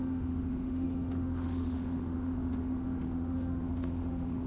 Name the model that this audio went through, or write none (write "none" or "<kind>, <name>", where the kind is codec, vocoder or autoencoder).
autoencoder, DAC-VAE